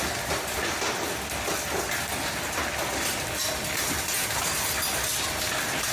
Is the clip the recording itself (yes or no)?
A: yes